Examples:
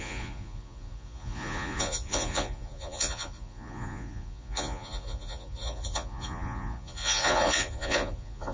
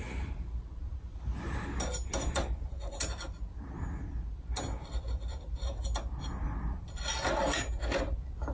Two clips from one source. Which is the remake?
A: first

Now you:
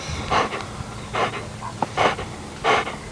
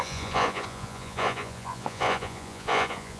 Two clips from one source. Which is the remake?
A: second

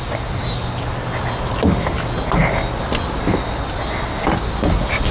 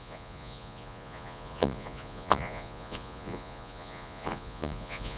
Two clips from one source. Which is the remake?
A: second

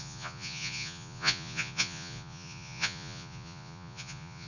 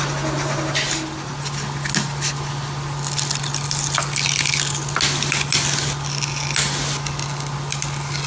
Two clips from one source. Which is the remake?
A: first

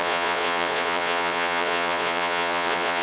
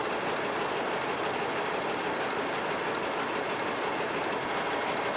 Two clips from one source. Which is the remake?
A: first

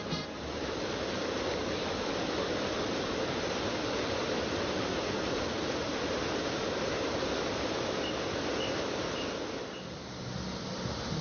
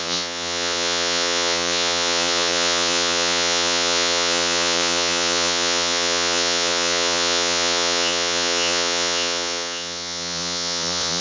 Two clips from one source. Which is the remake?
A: second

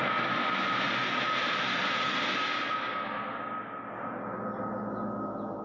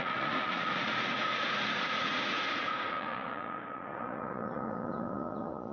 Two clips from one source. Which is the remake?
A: second